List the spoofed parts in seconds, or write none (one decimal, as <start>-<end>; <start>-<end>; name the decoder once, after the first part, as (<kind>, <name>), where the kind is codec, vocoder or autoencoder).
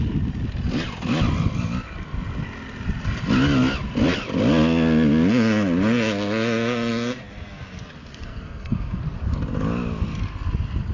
8.0-9.0 (codec, SNAC)